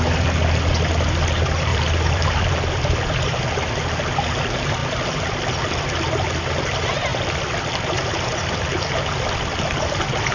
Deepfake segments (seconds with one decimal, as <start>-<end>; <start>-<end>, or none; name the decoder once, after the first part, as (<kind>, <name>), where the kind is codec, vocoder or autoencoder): 1.7-2.5 (vocoder, BigVGAN v2)